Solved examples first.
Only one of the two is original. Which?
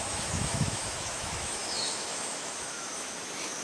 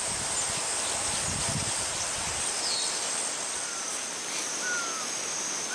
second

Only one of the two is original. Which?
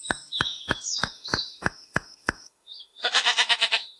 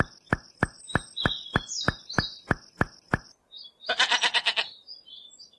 second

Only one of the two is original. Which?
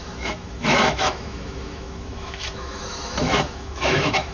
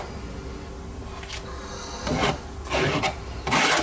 second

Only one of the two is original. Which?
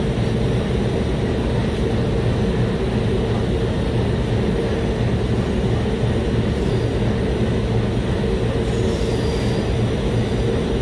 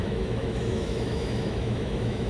first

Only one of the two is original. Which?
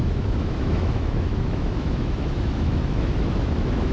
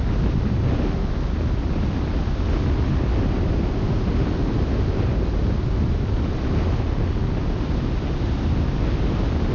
second